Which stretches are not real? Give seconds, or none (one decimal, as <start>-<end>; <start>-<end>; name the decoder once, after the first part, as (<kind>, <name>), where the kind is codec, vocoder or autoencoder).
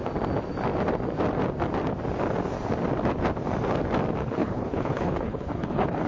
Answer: 4.2-6.1 (codec, HILCodec)